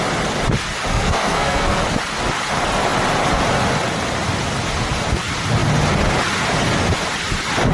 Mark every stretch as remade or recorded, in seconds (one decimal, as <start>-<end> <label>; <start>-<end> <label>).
0.0-0.9 recorded; 0.9-1.8 remade; 1.8-7.7 recorded